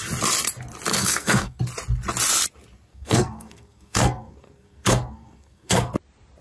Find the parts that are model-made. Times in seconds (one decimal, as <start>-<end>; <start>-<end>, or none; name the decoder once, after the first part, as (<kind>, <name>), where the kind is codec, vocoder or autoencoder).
0.9-1.6 (codec, SNAC); 2.9-5.9